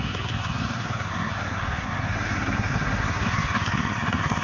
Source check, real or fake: fake